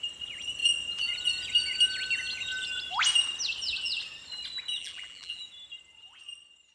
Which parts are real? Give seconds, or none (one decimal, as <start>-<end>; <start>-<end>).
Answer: 0.0-4.8; 5.4-6.7